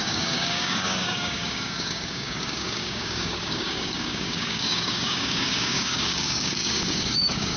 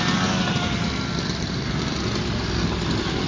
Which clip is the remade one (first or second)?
first